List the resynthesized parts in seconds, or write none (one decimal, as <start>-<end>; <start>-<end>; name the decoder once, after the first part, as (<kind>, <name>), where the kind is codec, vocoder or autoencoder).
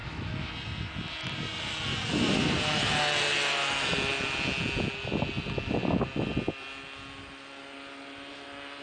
0.0-0.5 (autoencoder, DAC-VAE)